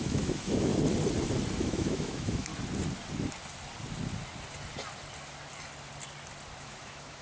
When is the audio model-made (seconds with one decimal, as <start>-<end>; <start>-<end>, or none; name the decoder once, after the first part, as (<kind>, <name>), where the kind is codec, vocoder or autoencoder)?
0.0-0.7 (autoencoder, DAC-VAE); 1.6-2.5; 6.6-7.2